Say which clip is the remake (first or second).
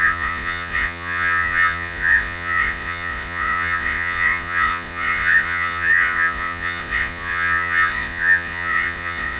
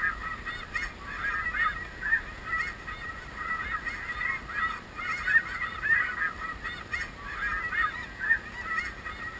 first